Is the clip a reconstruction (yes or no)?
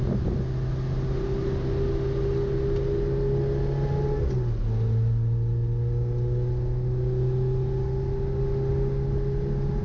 no